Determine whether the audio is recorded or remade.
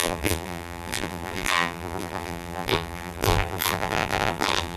remade